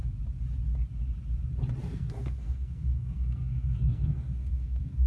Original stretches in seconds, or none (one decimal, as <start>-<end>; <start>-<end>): 0.0-1.8